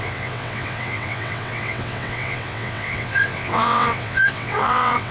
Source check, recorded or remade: remade